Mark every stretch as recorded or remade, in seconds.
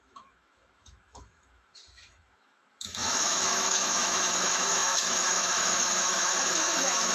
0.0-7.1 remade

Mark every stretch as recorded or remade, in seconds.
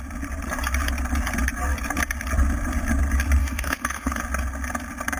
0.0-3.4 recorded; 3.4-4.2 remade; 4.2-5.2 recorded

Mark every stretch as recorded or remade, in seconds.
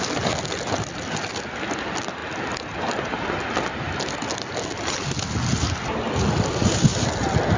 0.0-7.6 recorded